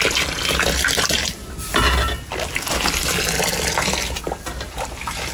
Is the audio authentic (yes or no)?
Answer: yes